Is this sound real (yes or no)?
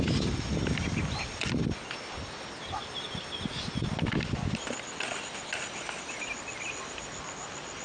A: yes